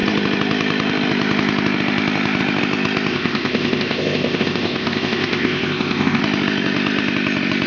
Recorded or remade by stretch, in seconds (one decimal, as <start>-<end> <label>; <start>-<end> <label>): 0.0-3.1 recorded; 3.1-6.2 remade; 6.2-7.7 recorded